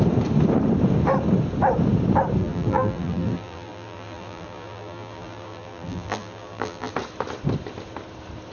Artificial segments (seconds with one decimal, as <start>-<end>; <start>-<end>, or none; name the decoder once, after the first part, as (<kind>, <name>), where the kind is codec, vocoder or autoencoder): 2.4-6.9 (vocoder, BigVGAN v2)